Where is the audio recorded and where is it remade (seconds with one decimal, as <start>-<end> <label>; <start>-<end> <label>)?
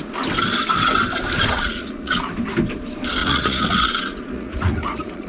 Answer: 0.0-1.5 recorded; 1.5-2.3 remade; 2.3-3.2 recorded; 3.2-5.3 remade